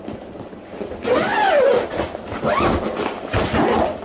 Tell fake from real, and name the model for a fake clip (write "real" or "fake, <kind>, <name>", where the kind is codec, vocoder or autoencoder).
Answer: real